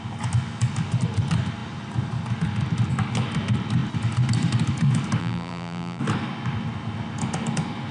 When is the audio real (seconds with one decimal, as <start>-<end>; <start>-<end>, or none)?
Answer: 0.0-5.2; 6.0-7.9